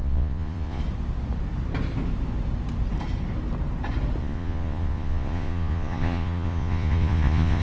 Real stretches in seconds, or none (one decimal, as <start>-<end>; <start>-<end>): 0.8-4.2